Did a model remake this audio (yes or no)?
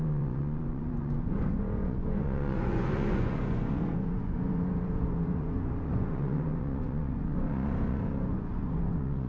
yes